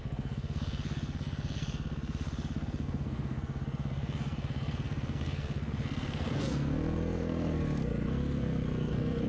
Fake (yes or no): yes